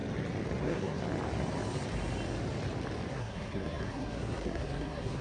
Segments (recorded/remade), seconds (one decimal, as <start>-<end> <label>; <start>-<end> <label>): 0.0-0.6 recorded; 0.6-1.0 remade; 1.0-3.1 recorded; 3.1-5.2 remade